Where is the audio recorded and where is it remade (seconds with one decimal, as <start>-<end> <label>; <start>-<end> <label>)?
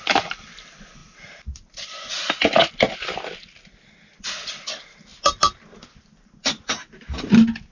0.0-7.7 recorded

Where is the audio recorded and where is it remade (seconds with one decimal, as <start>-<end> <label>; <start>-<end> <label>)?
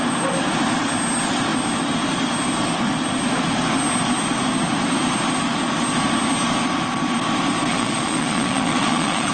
0.0-7.7 recorded; 7.7-9.3 remade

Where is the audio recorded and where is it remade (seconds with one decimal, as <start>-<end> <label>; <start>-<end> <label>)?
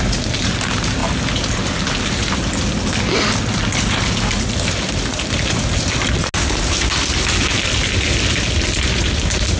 0.0-9.6 recorded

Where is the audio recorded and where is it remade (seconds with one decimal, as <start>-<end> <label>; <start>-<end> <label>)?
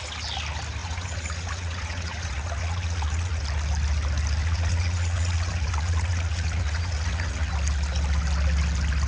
0.0-0.8 recorded; 0.8-3.4 remade; 3.4-4.4 recorded; 4.4-7.5 remade; 7.5-9.1 recorded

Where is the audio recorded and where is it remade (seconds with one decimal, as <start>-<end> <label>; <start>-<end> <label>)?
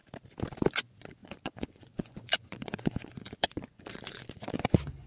0.0-0.7 recorded; 0.7-5.1 remade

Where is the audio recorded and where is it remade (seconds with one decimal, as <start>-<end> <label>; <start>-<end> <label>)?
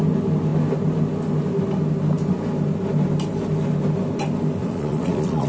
0.0-4.6 recorded; 4.6-5.5 remade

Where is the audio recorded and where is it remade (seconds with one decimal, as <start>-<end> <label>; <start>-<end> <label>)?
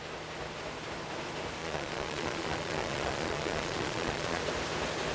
0.0-1.6 recorded; 1.6-4.4 remade; 4.4-5.1 recorded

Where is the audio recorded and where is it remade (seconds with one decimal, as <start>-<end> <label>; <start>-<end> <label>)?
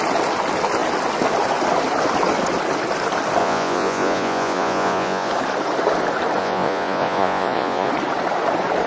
0.0-3.4 recorded; 3.4-5.3 remade; 5.3-6.4 recorded; 6.4-7.9 remade; 7.9-8.9 recorded